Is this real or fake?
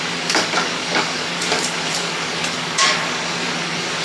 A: fake